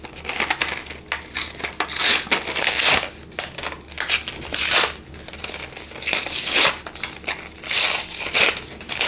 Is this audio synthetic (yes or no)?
no